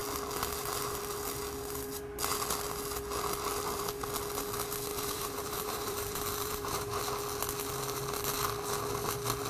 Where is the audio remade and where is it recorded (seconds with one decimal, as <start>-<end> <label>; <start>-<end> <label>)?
0.0-4.9 recorded; 4.9-7.0 remade; 7.0-9.5 recorded